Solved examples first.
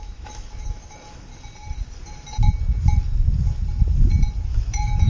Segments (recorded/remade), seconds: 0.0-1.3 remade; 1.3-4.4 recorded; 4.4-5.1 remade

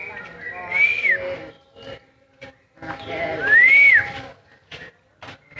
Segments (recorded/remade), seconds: 0.0-5.6 recorded